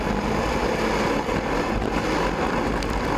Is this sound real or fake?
real